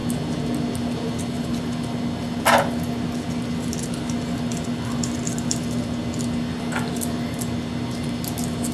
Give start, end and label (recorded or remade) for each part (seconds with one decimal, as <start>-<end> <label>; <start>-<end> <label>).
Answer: 0.0-8.7 recorded